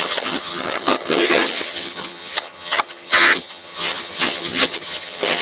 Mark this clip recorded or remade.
remade